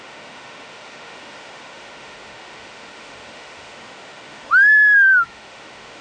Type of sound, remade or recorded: remade